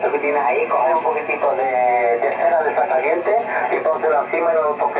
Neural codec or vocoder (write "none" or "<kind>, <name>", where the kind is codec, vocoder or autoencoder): none